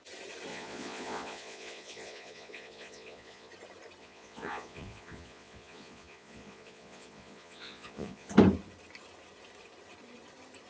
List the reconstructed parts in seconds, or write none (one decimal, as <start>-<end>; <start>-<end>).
0.5-3.5; 4.0-8.3